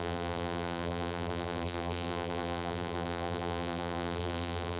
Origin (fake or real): fake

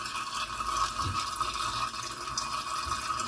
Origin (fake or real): real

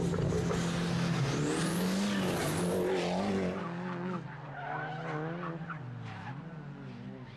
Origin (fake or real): real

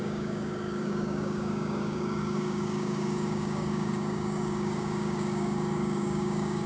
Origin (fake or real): fake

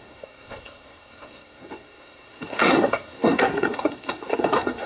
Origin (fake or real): fake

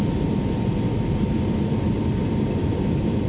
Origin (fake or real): real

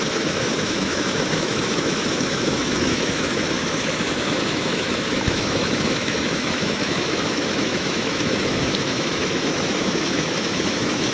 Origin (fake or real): fake